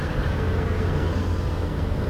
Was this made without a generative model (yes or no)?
no